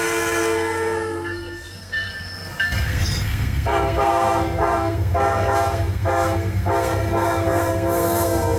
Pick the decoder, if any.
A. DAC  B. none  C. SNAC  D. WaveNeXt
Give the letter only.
C